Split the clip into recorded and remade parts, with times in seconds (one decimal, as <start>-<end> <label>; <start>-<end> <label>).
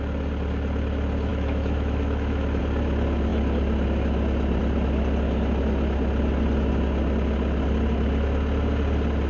0.0-1.3 recorded; 1.3-2.6 remade; 2.6-9.3 recorded